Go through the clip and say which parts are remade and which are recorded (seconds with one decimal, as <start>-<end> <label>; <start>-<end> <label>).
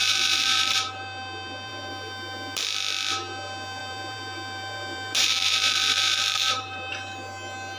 0.0-1.9 remade; 1.9-3.8 recorded; 3.8-6.9 remade; 6.9-7.8 recorded